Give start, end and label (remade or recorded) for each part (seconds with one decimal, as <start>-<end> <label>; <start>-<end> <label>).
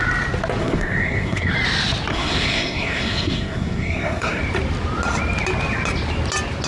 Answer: 0.0-0.6 recorded; 0.6-1.5 remade; 1.5-2.1 recorded; 2.1-4.4 remade; 4.4-6.7 recorded